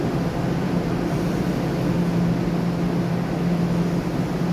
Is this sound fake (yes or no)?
no